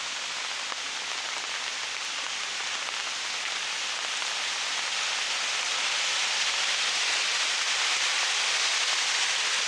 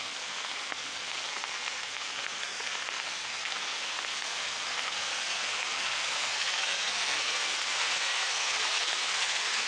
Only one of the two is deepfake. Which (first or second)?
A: second